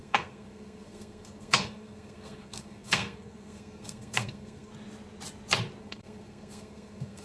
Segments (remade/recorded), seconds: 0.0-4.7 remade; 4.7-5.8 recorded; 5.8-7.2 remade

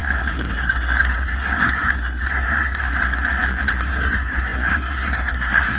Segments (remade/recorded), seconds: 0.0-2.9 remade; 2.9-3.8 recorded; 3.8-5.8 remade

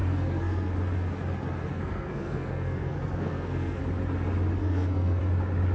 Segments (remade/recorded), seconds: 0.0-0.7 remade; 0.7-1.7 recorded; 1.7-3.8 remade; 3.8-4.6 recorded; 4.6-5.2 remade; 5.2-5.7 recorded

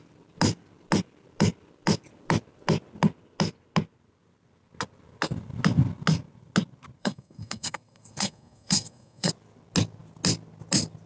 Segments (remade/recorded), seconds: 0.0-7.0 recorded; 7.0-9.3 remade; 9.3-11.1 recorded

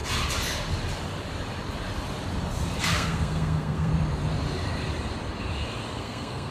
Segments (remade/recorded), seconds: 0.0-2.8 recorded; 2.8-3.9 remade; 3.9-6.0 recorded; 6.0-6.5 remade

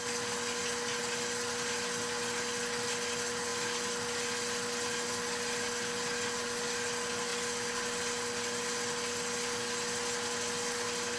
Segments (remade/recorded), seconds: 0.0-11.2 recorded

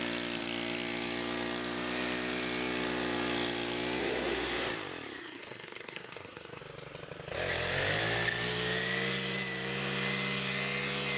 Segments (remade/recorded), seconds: 0.0-4.0 recorded; 4.0-4.7 remade; 4.7-5.2 recorded; 5.2-6.6 remade; 6.6-11.2 recorded

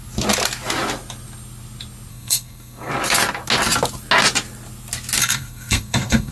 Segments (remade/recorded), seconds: 0.0-2.1 recorded; 2.1-2.9 remade; 2.9-5.2 recorded; 5.2-6.3 remade